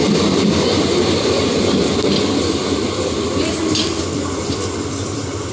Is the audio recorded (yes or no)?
yes